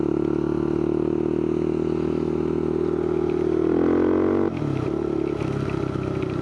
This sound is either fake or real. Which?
real